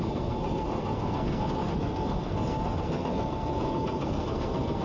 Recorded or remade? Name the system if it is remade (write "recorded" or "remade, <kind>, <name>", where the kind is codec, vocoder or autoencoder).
remade, codec, SNAC